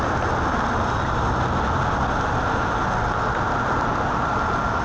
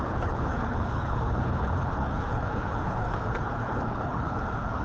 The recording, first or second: first